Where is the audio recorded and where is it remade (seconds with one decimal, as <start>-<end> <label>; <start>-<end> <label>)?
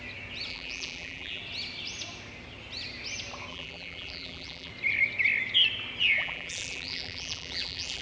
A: 0.0-0.5 recorded; 0.5-1.4 remade; 1.4-3.5 recorded; 3.5-4.7 remade; 4.7-6.2 recorded; 6.2-8.0 remade